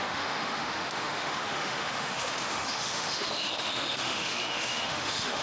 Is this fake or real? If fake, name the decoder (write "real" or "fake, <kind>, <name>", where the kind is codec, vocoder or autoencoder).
fake, autoencoder, DAC-VAE